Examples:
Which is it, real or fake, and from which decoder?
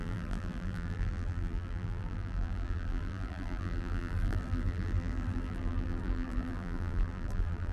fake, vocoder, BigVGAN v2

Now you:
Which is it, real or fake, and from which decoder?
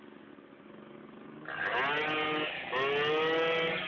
real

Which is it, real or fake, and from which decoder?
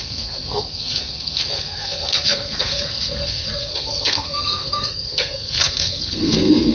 fake, codec, SNAC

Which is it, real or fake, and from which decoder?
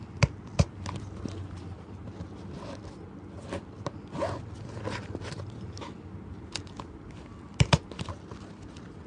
real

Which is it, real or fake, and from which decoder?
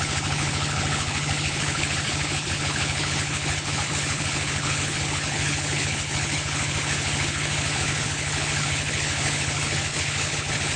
fake, codec, HILCodec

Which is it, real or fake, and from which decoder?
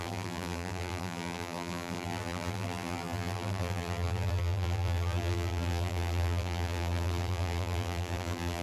fake, vocoder, BigVGAN v2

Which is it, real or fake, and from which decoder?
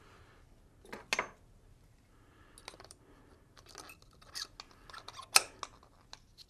real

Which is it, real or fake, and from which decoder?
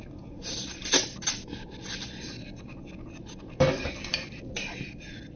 fake, vocoder, BigVGAN v2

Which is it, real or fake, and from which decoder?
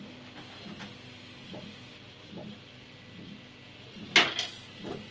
real